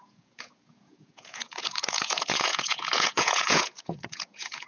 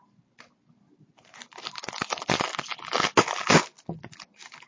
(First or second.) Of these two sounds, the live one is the second